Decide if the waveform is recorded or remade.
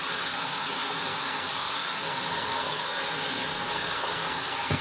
remade